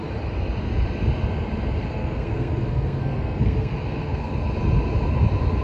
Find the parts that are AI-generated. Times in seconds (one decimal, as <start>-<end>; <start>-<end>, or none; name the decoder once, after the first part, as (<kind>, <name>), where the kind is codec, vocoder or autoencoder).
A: 1.8-4.3 (codec, SNAC)